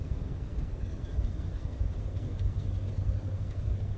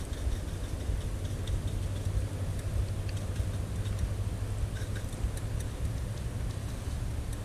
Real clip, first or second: second